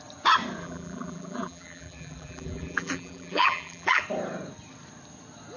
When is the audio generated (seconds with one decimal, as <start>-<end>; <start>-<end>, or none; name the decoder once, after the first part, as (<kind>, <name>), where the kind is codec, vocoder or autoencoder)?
0.6-4.0 (vocoder, BigVGAN v2)